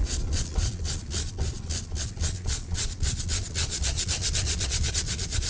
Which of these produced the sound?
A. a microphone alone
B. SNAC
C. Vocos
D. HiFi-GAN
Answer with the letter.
C